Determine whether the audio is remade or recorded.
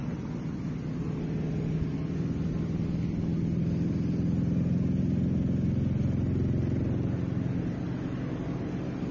recorded